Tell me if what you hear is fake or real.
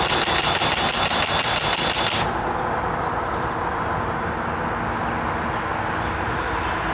real